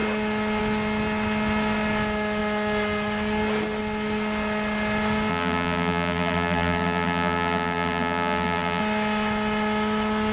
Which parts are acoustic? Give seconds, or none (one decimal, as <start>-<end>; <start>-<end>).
0.0-5.3; 8.8-10.3